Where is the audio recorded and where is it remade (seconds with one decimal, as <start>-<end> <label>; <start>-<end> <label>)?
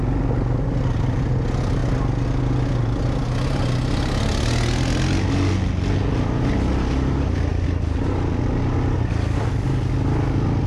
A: 0.0-10.7 recorded